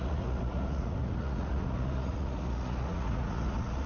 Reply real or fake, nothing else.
fake